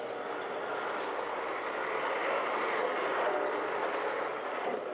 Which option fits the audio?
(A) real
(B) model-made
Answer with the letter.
A